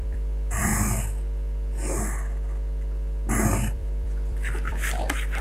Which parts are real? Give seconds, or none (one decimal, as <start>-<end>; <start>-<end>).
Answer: 0.7-3.3